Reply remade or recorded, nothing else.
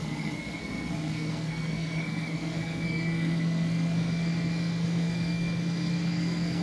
remade